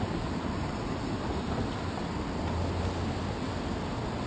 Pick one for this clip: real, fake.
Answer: real